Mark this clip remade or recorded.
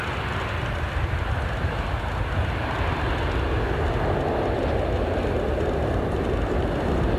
recorded